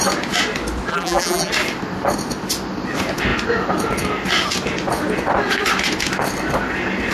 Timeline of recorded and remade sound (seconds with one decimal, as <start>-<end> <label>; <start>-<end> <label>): 0.0-0.9 recorded; 0.9-1.5 remade; 1.5-7.1 recorded